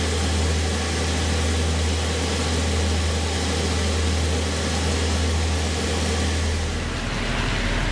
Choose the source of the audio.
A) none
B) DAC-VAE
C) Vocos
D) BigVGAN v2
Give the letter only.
A